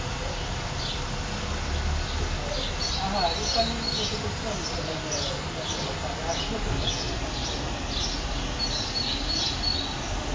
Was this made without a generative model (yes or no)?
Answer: yes